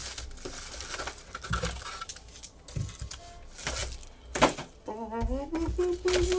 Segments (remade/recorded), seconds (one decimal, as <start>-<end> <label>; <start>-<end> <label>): 0.0-6.4 recorded